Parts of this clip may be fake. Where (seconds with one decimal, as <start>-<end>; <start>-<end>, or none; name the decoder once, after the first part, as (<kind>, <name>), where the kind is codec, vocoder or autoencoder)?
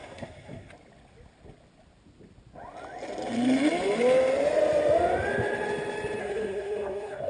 0.0-0.7 (codec, SNAC); 6.2-7.3